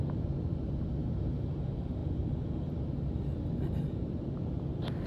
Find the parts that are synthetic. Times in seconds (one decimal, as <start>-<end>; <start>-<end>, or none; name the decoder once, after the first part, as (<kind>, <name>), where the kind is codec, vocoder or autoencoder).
none